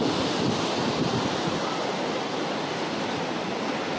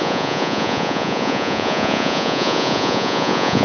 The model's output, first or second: second